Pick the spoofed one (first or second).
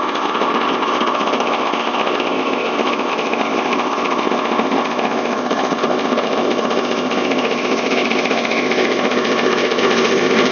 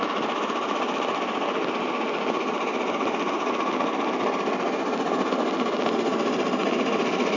first